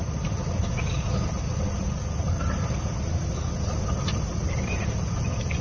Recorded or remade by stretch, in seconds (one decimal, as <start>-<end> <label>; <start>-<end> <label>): 0.0-5.6 recorded